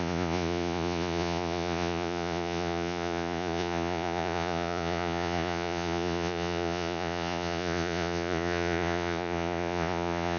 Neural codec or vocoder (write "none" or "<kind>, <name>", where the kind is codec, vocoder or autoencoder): vocoder, Vocos